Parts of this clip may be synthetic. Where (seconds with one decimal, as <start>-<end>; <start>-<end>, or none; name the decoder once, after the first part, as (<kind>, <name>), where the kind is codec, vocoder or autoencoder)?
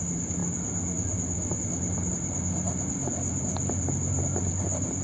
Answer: none